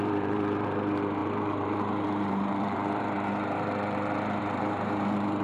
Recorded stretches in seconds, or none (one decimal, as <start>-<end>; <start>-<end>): none